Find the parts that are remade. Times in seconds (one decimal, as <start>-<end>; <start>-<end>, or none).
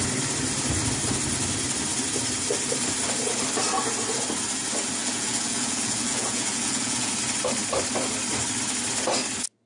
5.0-7.1